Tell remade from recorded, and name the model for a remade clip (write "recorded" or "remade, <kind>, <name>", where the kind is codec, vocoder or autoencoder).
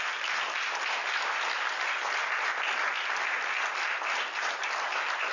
recorded